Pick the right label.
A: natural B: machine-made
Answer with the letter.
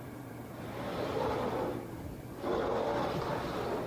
B